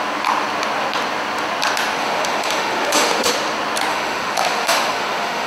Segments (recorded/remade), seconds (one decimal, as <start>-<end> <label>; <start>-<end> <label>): 0.0-2.0 recorded; 2.0-3.3 remade; 3.3-3.9 recorded; 3.9-5.5 remade